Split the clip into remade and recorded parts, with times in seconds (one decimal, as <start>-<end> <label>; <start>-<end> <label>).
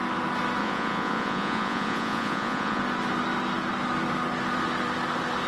0.0-0.6 recorded; 0.6-2.8 remade; 2.8-5.5 recorded